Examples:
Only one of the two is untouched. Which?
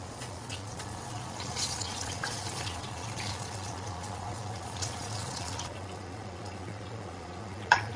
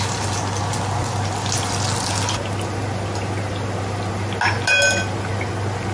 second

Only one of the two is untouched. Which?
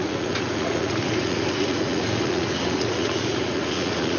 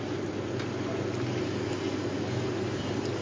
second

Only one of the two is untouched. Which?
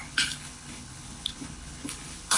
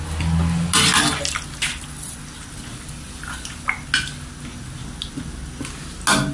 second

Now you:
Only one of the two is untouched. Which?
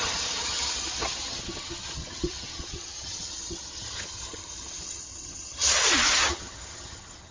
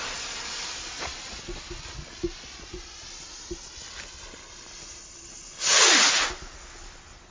second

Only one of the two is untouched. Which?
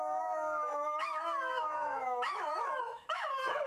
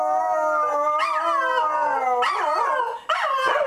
second